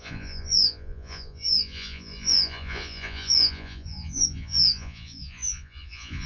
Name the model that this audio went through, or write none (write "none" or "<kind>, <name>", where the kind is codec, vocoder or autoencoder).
vocoder, Vocos